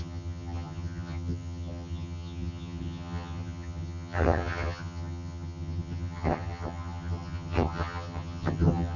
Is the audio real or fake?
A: fake